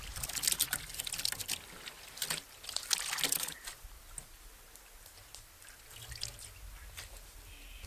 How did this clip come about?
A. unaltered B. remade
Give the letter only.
A